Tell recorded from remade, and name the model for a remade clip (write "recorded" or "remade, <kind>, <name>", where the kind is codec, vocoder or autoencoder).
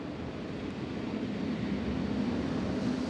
recorded